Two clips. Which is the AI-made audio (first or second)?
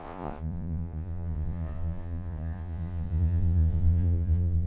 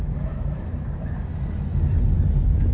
first